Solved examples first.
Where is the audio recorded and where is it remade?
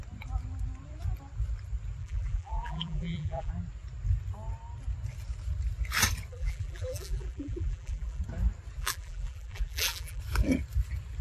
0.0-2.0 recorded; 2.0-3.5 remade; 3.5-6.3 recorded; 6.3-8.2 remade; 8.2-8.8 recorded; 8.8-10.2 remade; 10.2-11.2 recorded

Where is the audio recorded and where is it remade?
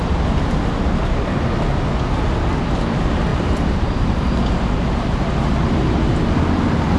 0.0-3.3 recorded; 3.3-5.3 remade; 5.3-7.0 recorded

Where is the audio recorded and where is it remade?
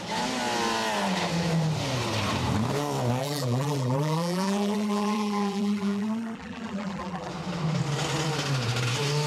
0.0-3.2 recorded; 3.2-7.3 remade; 7.3-9.3 recorded